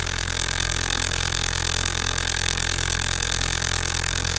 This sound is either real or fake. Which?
fake